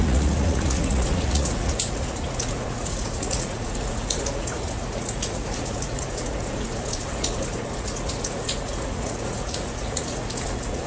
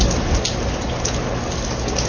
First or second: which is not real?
first